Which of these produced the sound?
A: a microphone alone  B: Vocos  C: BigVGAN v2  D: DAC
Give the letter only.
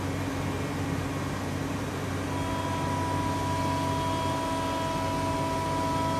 A